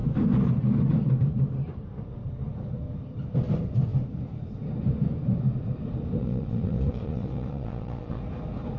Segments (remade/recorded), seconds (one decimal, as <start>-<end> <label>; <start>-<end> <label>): 0.0-6.2 recorded; 6.2-8.2 remade; 8.2-8.8 recorded